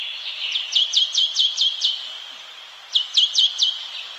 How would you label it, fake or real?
real